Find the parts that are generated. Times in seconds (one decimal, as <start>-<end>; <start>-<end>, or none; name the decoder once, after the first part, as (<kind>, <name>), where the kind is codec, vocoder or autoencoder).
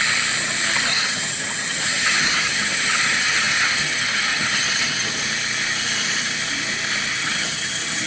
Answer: 0.9-5.1 (vocoder, HiFi-GAN); 7.1-8.1